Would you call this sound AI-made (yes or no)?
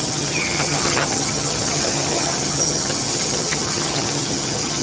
yes